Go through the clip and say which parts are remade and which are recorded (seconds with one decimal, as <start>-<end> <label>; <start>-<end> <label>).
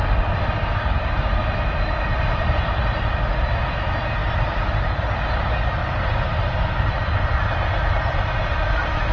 0.0-0.6 recorded; 0.6-1.3 remade; 1.3-9.1 recorded